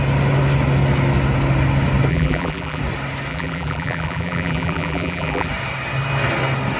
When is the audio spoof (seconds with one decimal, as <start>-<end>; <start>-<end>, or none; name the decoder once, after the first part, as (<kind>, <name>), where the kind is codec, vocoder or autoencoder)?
2.1-2.8 (vocoder, BigVGAN v2); 3.3-5.5